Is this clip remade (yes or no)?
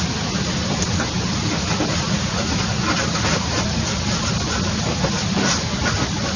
no